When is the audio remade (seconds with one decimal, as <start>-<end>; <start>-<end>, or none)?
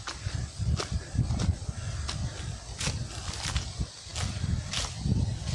none